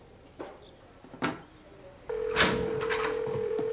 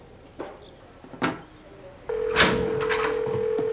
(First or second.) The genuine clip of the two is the second